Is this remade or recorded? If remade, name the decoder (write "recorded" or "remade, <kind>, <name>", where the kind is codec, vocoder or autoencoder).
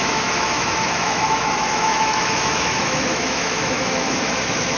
remade, autoencoder, DAC-VAE